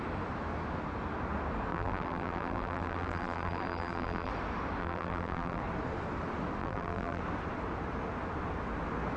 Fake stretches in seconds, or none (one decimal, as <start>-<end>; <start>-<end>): 1.7-4.3; 4.8-5.6; 6.6-7.2